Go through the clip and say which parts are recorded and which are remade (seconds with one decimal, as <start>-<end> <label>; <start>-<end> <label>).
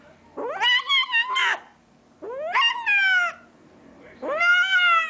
0.0-5.1 recorded